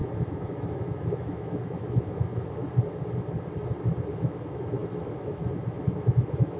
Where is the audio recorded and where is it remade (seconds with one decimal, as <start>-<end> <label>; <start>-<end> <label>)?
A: 0.0-2.6 remade; 2.6-4.2 recorded; 4.2-6.6 remade